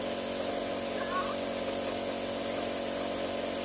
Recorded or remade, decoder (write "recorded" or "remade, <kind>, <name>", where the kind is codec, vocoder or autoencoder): recorded